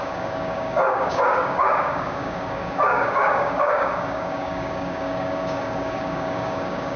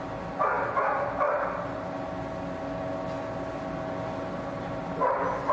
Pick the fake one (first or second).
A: first